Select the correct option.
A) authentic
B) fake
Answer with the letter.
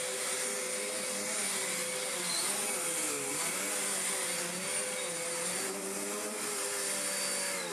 A